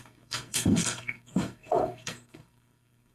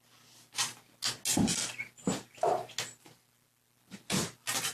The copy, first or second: first